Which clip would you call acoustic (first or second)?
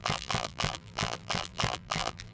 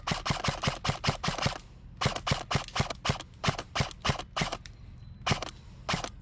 second